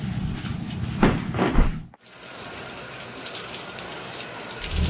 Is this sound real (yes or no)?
yes